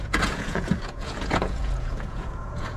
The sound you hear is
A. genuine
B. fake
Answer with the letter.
B